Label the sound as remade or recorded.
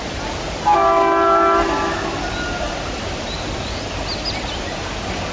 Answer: recorded